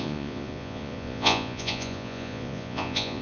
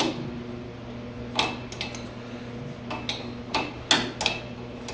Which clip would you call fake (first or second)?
first